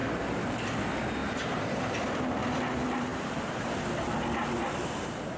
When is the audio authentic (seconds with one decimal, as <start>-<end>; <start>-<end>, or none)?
0.6-1.2; 1.9-3.1; 3.8-5.4